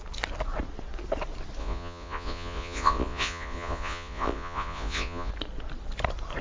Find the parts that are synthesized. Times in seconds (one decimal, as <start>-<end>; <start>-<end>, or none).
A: 1.6-5.3